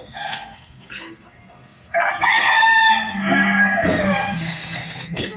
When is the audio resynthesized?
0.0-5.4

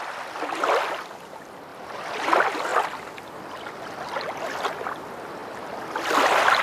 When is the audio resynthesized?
1.7-2.3; 2.7-3.4; 5.4-6.6

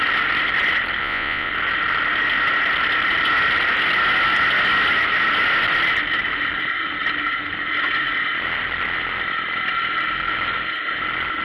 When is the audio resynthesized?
1.0-1.5